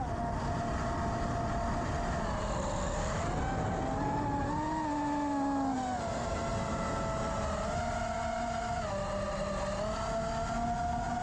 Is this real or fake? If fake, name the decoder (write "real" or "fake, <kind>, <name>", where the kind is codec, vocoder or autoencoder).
real